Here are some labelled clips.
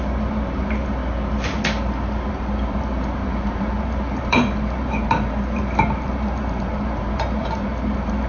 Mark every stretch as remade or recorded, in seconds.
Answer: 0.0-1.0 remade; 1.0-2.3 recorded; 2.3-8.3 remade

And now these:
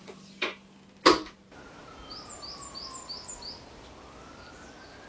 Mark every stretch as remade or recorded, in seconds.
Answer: 0.0-5.1 recorded

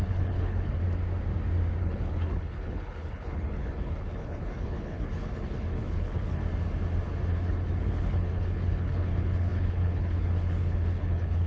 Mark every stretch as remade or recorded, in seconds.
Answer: 0.0-0.8 remade; 0.8-1.8 recorded; 1.8-6.4 remade; 6.4-7.3 recorded; 7.3-11.5 remade

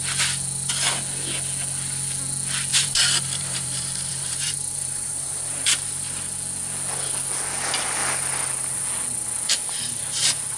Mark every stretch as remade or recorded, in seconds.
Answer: 0.0-2.7 recorded; 2.7-6.2 remade; 6.2-10.6 recorded

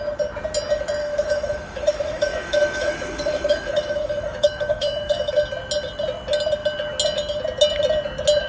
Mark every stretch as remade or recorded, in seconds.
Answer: 0.0-1.0 recorded; 1.0-5.3 remade; 5.3-8.5 recorded